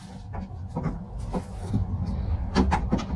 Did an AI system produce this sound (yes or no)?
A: no